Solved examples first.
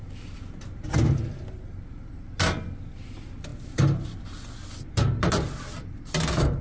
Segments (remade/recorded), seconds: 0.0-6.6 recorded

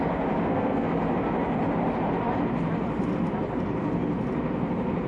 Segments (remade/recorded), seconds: 0.0-0.4 recorded; 0.4-0.9 remade; 0.9-5.1 recorded

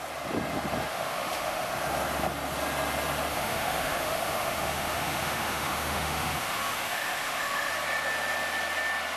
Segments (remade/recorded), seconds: 0.0-0.9 recorded; 0.9-1.7 remade; 1.7-3.3 recorded; 3.3-7.7 remade; 7.7-9.2 recorded

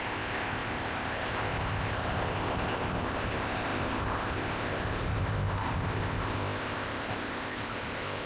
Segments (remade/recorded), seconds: 0.0-8.3 remade

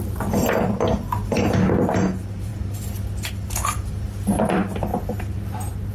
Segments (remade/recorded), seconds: 0.0-5.9 recorded

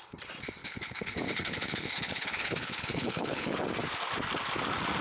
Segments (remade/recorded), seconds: 0.0-0.6 recorded; 0.6-3.6 remade; 3.6-5.0 recorded